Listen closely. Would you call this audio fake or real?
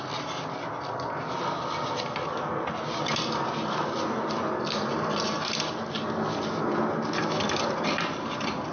real